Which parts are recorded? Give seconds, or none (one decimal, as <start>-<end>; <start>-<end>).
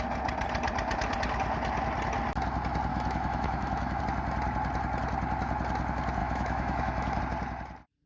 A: 0.0-2.9; 4.0-6.2; 7.2-8.1